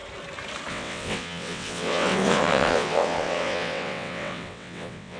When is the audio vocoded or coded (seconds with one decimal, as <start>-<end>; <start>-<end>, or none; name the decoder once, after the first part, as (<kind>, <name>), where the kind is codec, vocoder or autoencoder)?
0.7-5.2 (vocoder, WaveNeXt)